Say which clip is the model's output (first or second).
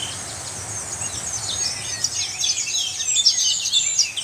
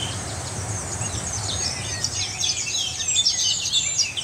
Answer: second